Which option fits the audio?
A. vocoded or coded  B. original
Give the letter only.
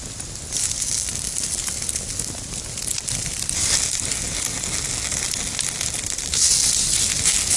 B